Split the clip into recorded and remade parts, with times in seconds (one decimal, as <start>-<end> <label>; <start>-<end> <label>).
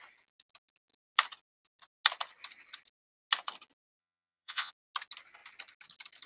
0.0-4.0 recorded; 4.0-4.7 remade; 4.7-6.3 recorded